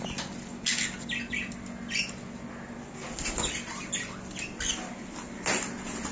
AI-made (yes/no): no